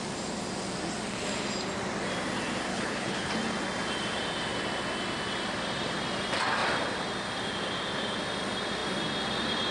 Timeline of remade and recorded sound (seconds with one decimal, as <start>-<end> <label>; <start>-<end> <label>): 0.0-2.7 recorded; 2.7-3.3 remade; 3.3-9.7 recorded